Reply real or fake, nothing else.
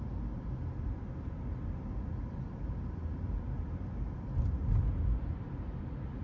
real